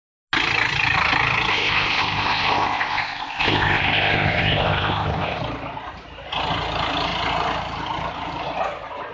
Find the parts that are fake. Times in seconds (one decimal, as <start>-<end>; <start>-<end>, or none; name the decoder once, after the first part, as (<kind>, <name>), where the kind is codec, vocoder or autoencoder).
1.5-5.4 (codec, ZipCodec)